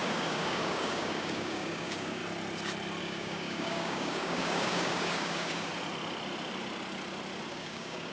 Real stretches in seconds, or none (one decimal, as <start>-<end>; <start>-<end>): 2.2-3.0; 5.7-7.5